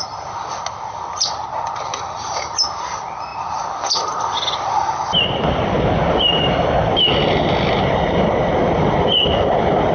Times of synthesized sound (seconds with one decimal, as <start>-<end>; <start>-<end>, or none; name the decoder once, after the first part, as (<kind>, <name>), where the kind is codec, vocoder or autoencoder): none